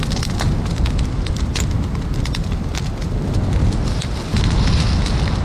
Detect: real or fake real